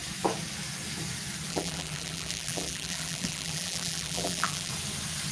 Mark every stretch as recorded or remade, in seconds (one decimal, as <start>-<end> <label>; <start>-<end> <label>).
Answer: 0.0-1.5 recorded; 1.5-4.7 remade; 4.7-5.3 recorded